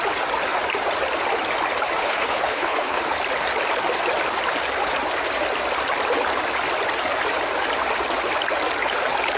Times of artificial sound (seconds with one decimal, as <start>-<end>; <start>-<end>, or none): 2.0-3.0